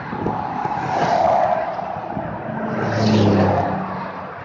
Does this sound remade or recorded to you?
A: recorded